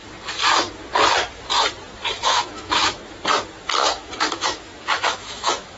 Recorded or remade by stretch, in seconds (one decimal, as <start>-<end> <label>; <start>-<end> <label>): 0.0-2.2 recorded; 2.2-3.0 remade; 3.0-3.8 recorded; 3.8-5.8 remade